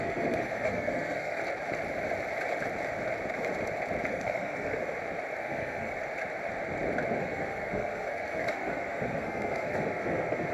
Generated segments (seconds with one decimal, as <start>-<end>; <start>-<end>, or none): 0.0-1.4; 4.1-4.8; 5.4-5.9; 7.2-10.5